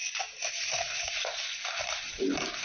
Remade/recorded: recorded